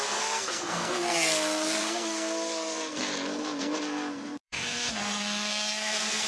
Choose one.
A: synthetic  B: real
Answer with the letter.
A